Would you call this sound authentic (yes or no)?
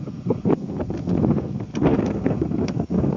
no